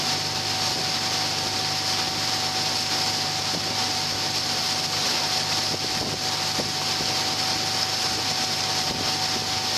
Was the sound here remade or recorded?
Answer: recorded